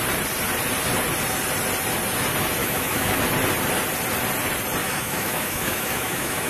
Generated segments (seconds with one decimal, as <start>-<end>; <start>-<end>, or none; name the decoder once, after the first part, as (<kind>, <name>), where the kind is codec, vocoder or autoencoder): 2.6-3.2 (autoencoder, DAC-VAE); 4.8-6.5